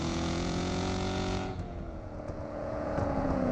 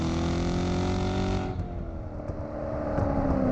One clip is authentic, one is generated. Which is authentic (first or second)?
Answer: second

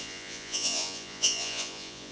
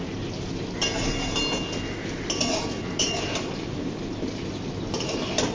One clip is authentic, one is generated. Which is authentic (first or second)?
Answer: second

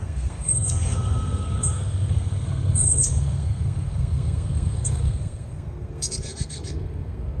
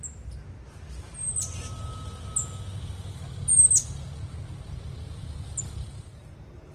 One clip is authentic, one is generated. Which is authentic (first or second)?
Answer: second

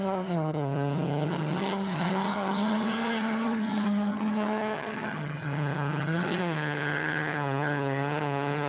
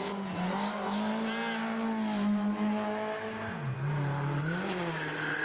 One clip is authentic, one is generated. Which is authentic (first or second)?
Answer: second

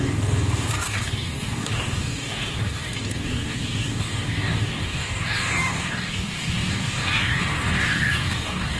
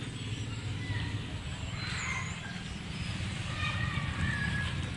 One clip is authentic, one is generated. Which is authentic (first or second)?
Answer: second